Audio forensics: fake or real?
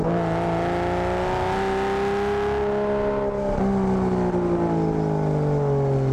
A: real